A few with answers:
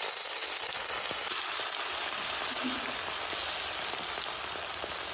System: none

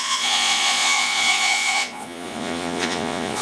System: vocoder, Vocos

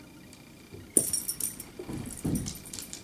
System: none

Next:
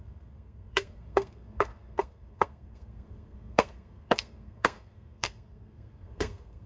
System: codec, SNAC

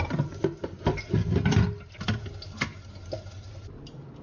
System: none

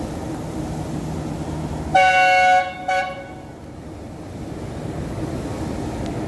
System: none